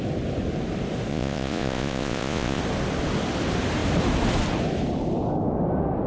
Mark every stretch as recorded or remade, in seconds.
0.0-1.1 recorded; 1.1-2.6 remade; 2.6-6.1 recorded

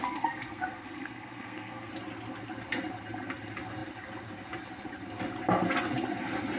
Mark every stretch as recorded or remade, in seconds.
0.0-1.9 remade; 1.9-6.6 recorded

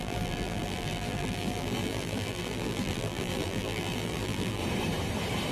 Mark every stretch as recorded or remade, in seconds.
0.0-4.6 remade; 4.6-5.5 recorded

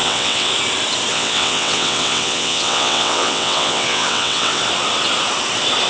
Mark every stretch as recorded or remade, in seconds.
0.0-0.5 remade; 0.5-1.1 recorded; 1.1-4.6 remade; 4.6-5.9 recorded

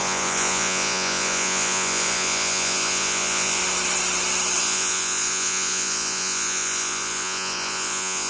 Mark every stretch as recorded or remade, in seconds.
0.0-3.6 remade; 3.6-4.6 recorded; 4.6-8.3 remade